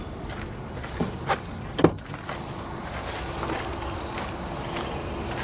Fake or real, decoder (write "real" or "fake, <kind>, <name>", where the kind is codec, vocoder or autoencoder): real